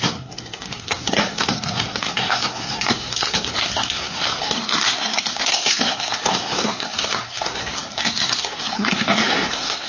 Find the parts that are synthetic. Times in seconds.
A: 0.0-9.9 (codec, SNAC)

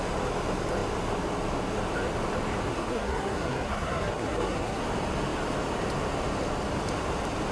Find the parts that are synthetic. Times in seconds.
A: 2.7-4.8 (codec, SNAC)